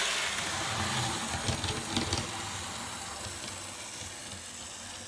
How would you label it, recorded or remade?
recorded